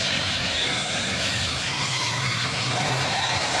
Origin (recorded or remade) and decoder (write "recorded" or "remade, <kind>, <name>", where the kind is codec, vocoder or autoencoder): remade, codec, SNAC